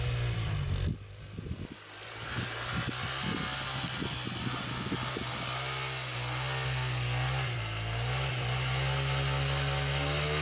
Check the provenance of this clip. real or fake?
real